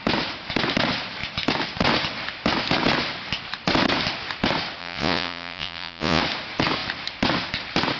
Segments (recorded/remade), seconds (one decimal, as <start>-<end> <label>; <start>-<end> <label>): 0.0-4.8 recorded; 4.8-6.2 remade; 6.2-8.0 recorded